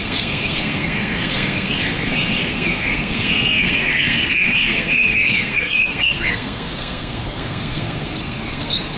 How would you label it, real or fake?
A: fake